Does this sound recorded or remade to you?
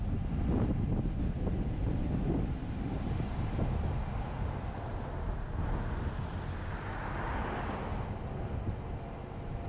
recorded